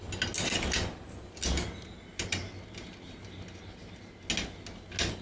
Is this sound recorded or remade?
recorded